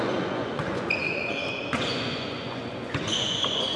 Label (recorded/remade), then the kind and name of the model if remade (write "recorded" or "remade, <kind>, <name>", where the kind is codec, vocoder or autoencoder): remade, vocoder, Vocos